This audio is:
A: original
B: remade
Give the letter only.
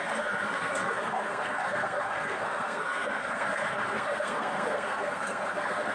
B